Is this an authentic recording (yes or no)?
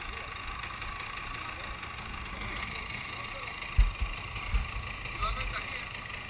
yes